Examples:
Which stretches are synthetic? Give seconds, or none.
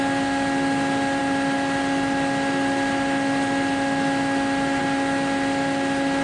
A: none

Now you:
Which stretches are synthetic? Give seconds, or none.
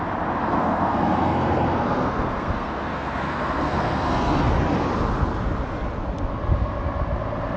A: 0.4-4.5 (codec, SNAC)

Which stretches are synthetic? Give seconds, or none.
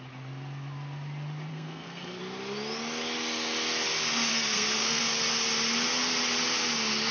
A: 1.5-2.2 (codec, SNAC); 4.3-5.0